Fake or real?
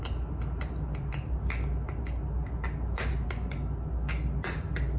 real